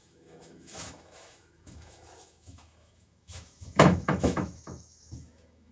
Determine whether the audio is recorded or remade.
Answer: remade